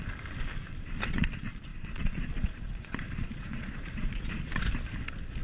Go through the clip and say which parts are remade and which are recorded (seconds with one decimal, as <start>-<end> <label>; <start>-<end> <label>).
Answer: 0.0-1.7 recorded; 1.7-4.7 remade; 4.7-5.4 recorded